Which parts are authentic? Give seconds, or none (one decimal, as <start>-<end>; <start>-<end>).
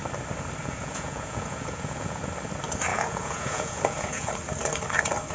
0.0-0.6; 2.2-2.9; 4.3-5.3